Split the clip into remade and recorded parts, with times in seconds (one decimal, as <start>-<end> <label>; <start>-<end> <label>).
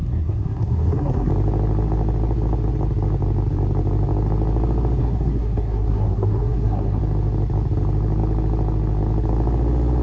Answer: 0.0-1.3 remade; 1.3-5.0 recorded; 5.0-7.0 remade; 7.0-10.0 recorded